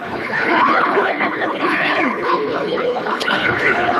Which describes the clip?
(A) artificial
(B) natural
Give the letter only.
A